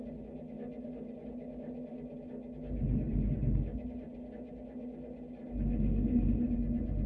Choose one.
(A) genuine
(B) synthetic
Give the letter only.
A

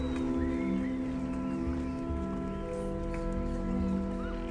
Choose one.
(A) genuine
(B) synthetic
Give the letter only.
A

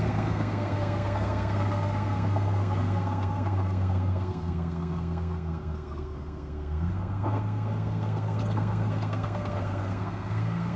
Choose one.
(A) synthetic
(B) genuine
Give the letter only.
A